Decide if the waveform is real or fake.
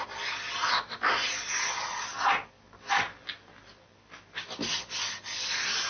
real